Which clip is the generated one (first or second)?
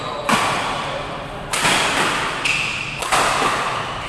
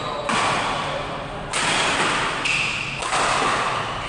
first